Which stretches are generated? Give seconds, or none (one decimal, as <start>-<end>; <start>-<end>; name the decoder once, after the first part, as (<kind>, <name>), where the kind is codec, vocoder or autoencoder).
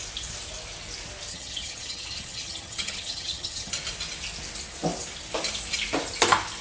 1.3-3.7 (vocoder, HiFi-GAN)